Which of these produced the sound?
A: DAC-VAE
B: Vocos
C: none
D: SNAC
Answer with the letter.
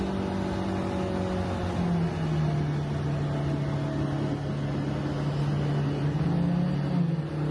C